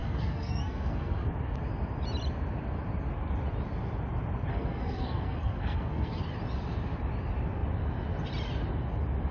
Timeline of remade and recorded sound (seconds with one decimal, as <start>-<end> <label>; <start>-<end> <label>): 0.0-1.3 remade; 1.3-4.5 recorded; 4.5-6.2 remade; 6.2-9.3 recorded